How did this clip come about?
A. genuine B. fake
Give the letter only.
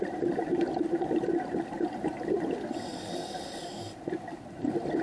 A